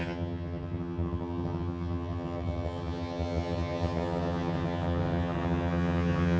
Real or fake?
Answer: fake